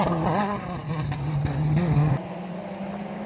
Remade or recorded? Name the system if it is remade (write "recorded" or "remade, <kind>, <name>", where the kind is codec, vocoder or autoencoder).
recorded